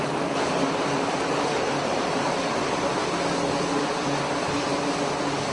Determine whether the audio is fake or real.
real